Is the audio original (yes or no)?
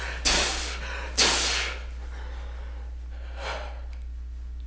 yes